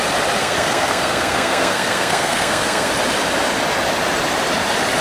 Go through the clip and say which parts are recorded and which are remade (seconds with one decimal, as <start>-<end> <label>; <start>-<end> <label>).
0.0-0.4 recorded; 0.4-2.9 remade; 2.9-5.0 recorded